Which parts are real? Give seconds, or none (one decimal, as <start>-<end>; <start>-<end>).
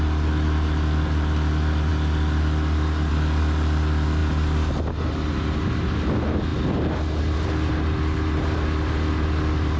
0.0-9.8